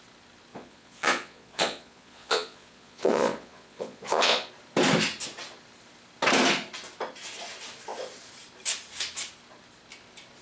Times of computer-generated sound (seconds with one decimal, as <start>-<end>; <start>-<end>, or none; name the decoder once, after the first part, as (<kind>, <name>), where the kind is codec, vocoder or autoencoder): 0.5-4.5 (vocoder, Vocos)